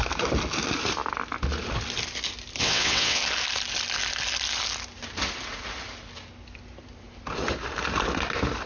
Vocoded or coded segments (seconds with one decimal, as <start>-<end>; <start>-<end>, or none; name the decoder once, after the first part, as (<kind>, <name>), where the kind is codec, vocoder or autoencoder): 2.6-3.2 (vocoder, WaveNeXt)